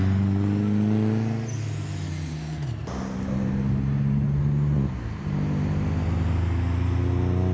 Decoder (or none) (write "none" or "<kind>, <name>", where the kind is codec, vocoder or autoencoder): none